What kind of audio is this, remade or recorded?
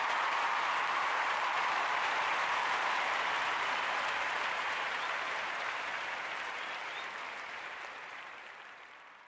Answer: remade